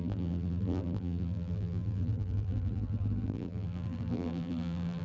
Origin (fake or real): fake